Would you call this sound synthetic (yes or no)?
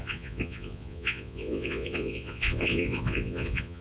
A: yes